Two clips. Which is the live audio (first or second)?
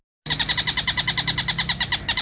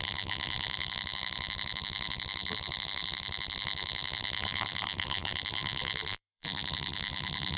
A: first